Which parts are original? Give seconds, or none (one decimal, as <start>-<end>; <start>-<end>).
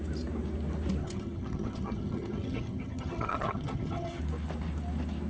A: 0.0-1.0; 4.2-5.3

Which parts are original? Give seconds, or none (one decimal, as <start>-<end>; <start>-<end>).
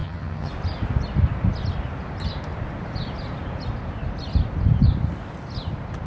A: 0.5-6.1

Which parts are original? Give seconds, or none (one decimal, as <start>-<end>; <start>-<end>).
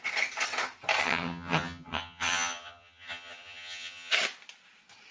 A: 0.0-1.0; 4.1-5.1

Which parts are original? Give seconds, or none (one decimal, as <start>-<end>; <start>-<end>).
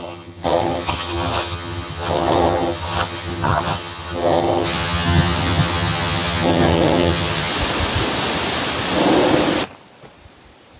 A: 7.5-10.8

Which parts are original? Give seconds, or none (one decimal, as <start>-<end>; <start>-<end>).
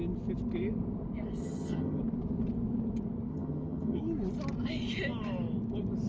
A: 0.0-1.4; 2.0-3.3; 4.0-6.1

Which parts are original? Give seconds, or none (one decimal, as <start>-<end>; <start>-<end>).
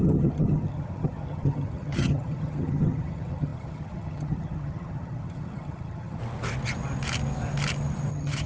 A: 6.2-8.1